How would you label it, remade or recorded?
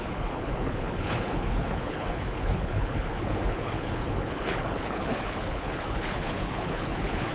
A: remade